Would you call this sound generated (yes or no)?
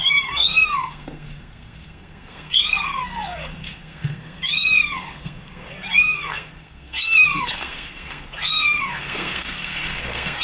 yes